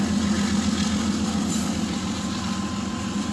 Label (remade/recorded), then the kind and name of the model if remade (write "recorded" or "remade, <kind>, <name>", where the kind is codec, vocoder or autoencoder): recorded